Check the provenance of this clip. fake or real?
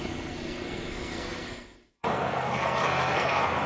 fake